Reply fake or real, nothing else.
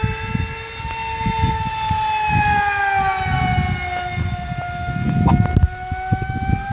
real